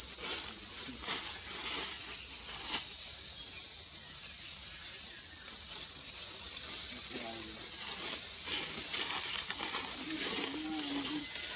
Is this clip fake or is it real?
real